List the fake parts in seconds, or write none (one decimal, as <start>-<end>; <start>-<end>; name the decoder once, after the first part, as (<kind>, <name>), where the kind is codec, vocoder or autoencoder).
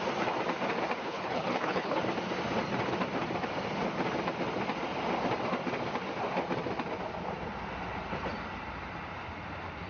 1.0-2.0 (codec, HILCodec)